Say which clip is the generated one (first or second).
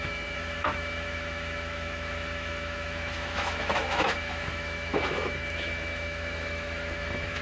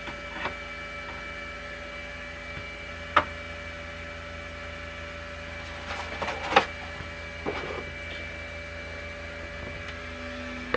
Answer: first